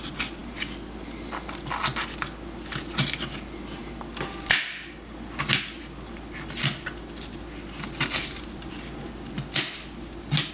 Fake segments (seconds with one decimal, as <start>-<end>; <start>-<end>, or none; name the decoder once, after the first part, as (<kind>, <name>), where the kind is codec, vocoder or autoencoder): none